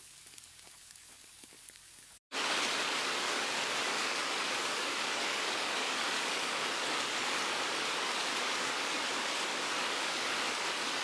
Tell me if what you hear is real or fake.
fake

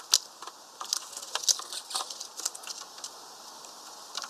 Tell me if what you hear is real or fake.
real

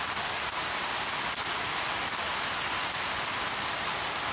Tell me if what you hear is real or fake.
real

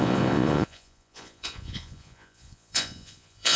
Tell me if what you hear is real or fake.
fake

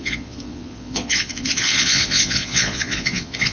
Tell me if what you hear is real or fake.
fake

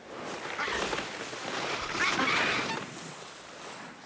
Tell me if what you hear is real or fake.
real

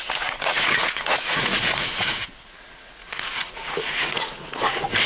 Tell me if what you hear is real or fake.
fake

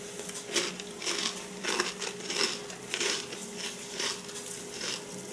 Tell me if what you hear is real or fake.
real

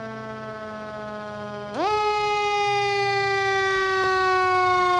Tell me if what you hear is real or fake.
fake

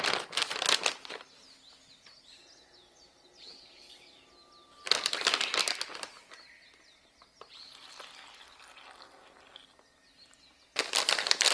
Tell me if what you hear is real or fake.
real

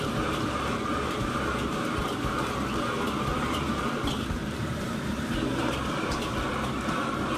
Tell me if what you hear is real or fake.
fake